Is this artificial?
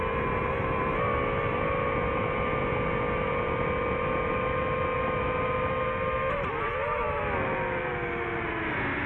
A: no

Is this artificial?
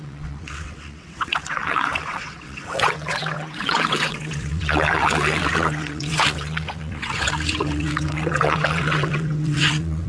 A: yes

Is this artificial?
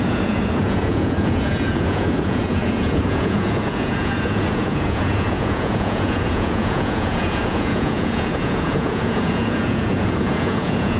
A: yes